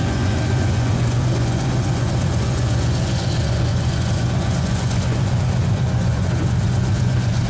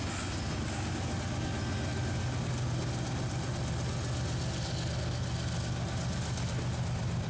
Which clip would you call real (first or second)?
second